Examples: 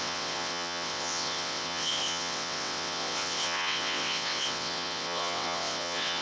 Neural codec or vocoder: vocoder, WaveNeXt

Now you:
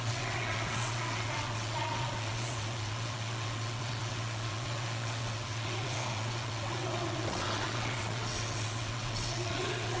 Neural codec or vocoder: vocoder, WaveNeXt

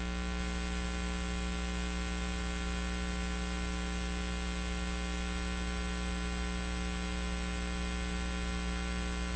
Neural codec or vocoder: none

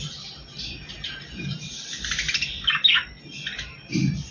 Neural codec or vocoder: none